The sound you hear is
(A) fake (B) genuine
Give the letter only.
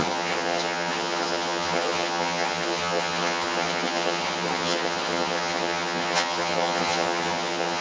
A